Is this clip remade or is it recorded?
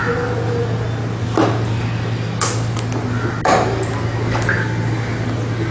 recorded